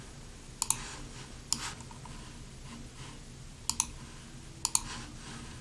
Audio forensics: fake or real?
real